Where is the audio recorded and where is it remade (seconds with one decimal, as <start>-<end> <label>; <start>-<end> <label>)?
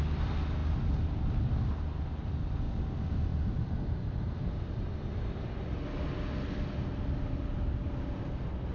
0.0-3.3 recorded; 3.3-5.3 remade; 5.3-8.7 recorded